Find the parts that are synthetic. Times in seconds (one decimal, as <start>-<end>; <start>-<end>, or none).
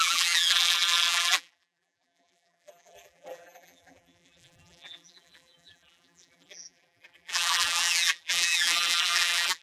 0.0-9.6